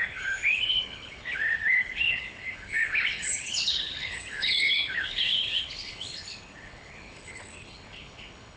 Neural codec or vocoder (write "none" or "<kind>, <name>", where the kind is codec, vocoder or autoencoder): codec, HILCodec